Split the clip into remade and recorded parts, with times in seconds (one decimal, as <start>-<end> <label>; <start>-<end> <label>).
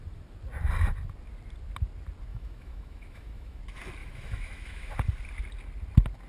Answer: 0.0-2.3 recorded; 2.3-3.6 remade; 3.6-4.0 recorded; 4.0-4.9 remade; 4.9-6.3 recorded